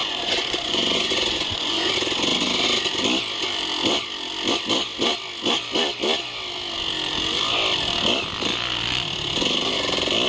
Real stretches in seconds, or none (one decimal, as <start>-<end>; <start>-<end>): 1.9-10.3